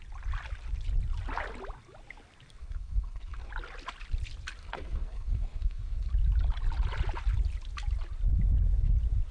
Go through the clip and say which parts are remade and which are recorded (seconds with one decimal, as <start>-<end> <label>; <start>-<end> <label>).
0.0-2.6 recorded; 2.6-3.5 remade; 3.5-4.6 recorded; 4.6-6.1 remade; 6.1-9.3 recorded